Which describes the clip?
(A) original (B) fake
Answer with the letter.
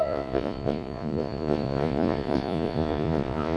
B